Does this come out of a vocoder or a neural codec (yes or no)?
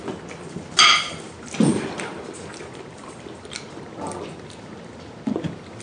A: no